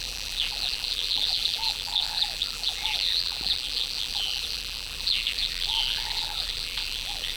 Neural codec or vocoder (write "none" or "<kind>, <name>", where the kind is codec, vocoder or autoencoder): vocoder, BigVGAN v2